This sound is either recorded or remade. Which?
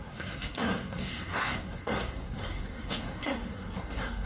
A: remade